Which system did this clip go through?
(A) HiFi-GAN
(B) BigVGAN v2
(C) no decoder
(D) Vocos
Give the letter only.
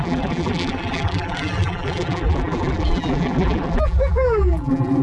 B